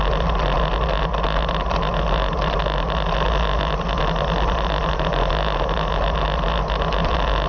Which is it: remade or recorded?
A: recorded